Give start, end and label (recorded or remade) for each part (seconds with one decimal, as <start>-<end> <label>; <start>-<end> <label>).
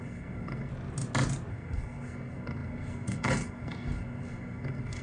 0.0-0.7 remade; 0.7-1.5 recorded; 1.5-5.0 remade